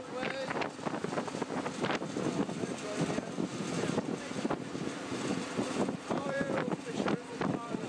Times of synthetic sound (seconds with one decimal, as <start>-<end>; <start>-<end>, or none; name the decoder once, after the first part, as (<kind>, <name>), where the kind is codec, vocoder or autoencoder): 3.5-7.2 (vocoder, BigVGAN v2)